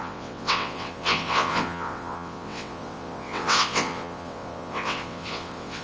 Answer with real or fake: fake